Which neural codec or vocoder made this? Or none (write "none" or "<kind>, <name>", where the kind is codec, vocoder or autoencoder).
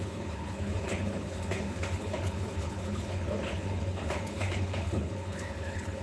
codec, HILCodec